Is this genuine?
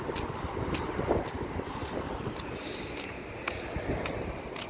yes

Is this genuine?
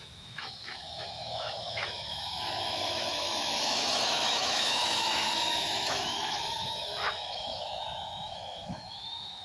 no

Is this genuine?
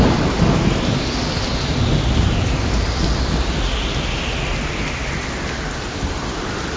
yes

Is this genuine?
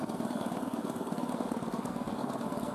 no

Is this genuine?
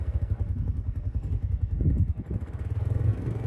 no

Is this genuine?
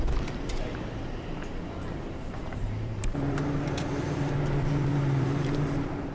no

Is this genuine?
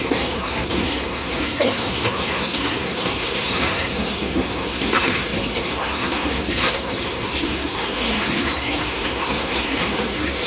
no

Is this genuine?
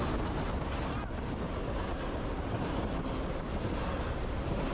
yes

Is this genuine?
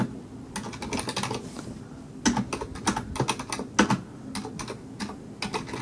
yes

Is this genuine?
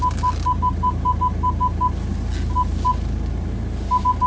yes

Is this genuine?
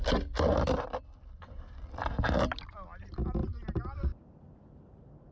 yes